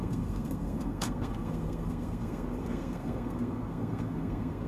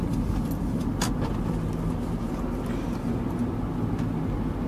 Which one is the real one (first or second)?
second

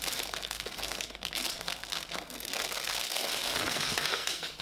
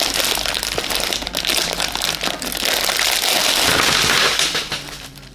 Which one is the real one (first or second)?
second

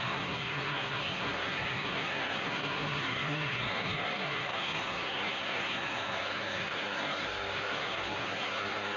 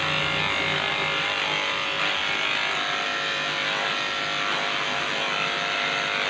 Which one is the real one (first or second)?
second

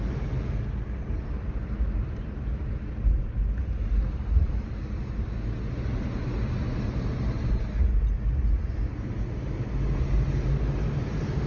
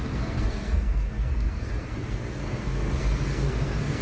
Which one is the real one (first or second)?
first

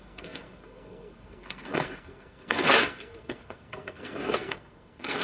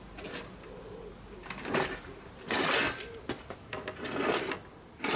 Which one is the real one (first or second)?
second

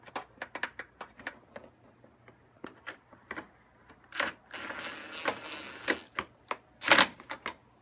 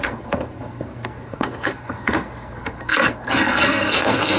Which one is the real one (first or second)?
first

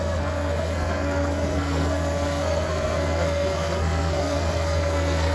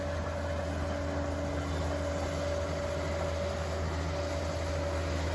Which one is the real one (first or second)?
second